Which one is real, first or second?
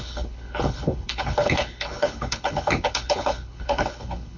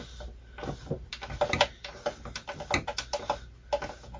second